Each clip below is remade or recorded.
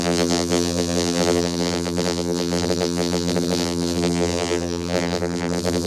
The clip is remade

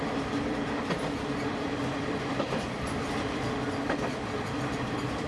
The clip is remade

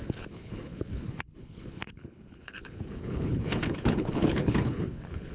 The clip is remade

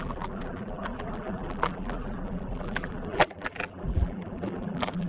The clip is remade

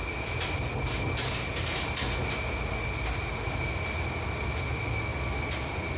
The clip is recorded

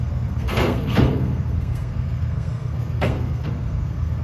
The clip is remade